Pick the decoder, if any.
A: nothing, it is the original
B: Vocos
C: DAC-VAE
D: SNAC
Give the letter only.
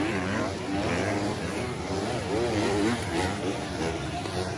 A